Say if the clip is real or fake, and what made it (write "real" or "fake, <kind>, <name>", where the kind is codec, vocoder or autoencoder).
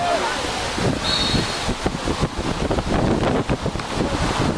real